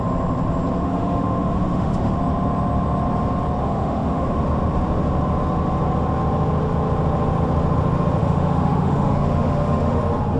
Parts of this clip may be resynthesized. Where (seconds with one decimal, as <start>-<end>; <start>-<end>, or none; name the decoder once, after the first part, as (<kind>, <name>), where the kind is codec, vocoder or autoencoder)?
0.8-2.2 (autoencoder, DAC-VAE); 3.6-4.4; 8.2-10.0